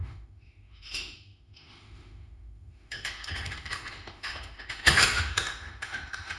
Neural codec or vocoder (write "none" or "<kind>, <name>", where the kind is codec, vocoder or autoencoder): autoencoder, DAC-VAE